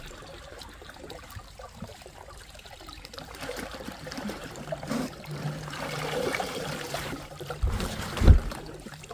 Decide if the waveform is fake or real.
fake